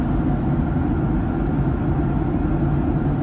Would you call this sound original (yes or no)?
yes